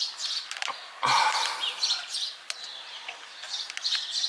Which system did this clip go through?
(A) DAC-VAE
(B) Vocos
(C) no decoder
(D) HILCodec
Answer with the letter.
C